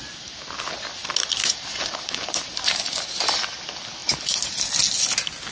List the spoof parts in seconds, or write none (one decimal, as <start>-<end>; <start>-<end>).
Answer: 1.0-2.8; 4.0-4.7